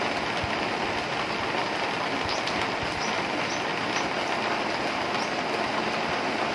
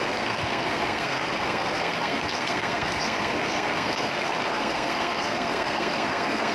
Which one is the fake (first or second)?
second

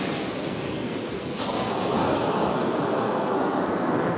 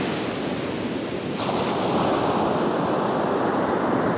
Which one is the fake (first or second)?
first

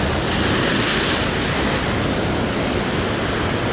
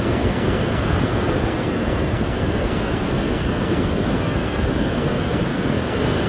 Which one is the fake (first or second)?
second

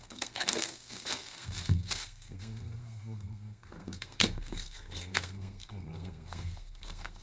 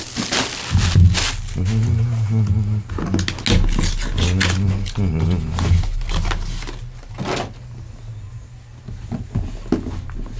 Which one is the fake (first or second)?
first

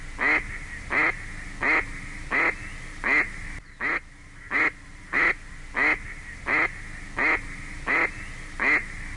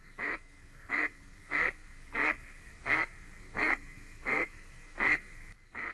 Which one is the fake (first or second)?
second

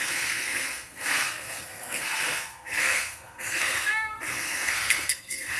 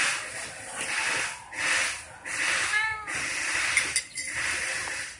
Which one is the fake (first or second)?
first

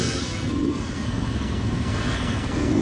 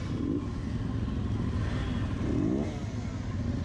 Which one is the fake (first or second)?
first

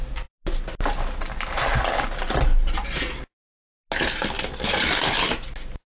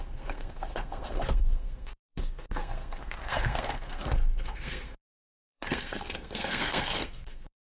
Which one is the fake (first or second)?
second